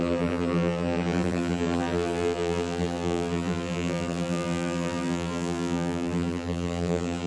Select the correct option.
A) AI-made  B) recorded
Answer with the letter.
A